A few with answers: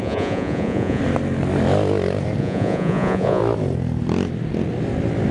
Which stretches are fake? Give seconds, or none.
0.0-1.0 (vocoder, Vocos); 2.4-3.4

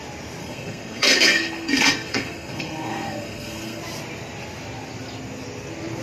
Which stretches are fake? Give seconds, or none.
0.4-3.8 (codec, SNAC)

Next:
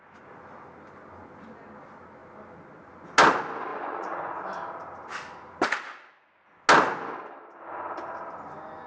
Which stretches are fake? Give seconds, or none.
3.7-4.4 (vocoder, Vocos)

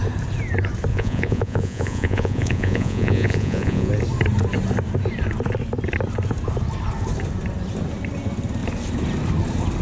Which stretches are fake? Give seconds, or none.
0.9-3.9 (vocoder, Vocos)

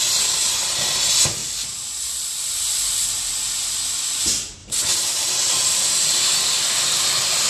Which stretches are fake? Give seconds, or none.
1.4-3.2 (vocoder, BigVGAN v2); 4.6-6.2

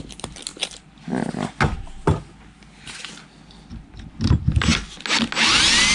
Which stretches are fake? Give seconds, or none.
none